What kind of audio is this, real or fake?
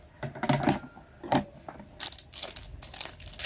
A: real